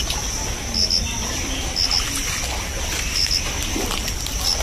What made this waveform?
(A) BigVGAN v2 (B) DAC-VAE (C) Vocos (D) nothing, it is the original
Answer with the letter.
D